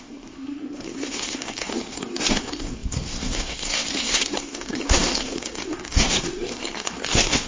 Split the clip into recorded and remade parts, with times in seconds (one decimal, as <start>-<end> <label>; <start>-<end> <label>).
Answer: 0.0-7.5 remade

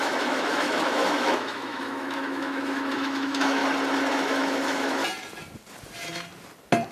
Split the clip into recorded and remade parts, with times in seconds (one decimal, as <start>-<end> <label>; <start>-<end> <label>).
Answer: 0.0-3.6 remade; 3.6-4.1 recorded; 4.1-5.0 remade; 5.0-6.9 recorded

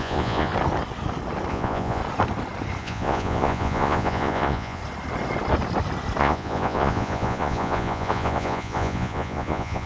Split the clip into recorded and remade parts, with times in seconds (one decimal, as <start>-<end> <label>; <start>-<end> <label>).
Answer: 0.0-0.5 remade; 0.5-1.5 recorded; 1.5-2.0 remade; 2.0-2.8 recorded; 2.8-4.8 remade; 4.8-6.2 recorded; 6.2-9.9 remade

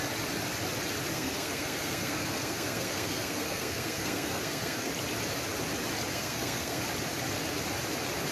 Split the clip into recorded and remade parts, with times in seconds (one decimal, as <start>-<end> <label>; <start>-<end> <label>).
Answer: 0.0-1.1 recorded; 1.1-4.9 remade; 4.9-6.1 recorded; 6.1-6.8 remade; 6.8-8.3 recorded

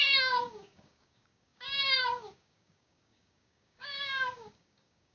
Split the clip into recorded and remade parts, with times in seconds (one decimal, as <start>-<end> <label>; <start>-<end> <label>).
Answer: 0.0-5.1 remade

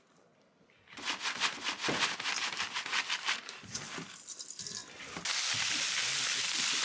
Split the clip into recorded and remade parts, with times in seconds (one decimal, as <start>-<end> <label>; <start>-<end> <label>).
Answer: 0.0-6.8 recorded

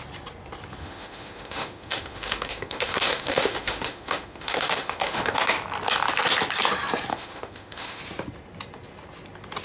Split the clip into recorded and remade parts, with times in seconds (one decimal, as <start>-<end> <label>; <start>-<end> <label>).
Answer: 0.0-0.8 recorded; 0.8-5.4 remade; 5.4-7.1 recorded; 7.1-8.0 remade; 8.0-9.6 recorded

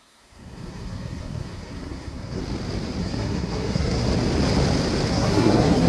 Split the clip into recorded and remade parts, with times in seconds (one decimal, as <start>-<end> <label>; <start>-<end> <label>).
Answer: 0.0-2.4 remade; 2.4-3.0 recorded; 3.0-4.1 remade; 4.1-5.1 recorded; 5.1-5.9 remade